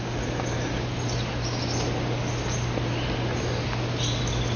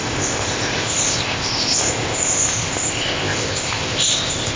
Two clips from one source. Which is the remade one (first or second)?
second